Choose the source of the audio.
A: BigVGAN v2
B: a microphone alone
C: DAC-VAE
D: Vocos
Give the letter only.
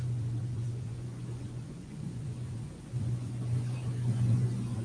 D